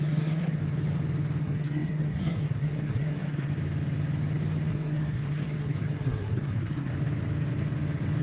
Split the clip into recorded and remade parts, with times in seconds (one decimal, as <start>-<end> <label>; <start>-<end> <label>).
0.0-0.6 remade; 0.6-1.4 recorded; 1.4-3.5 remade; 3.5-4.7 recorded; 4.7-6.9 remade; 6.9-8.2 recorded